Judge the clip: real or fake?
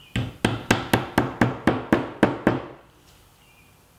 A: real